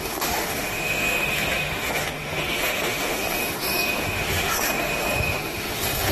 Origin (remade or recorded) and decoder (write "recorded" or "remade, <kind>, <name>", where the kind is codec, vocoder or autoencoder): remade, autoencoder, DAC-VAE